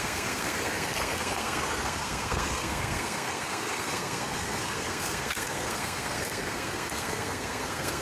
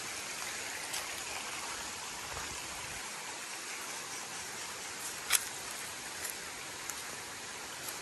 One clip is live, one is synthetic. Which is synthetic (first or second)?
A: first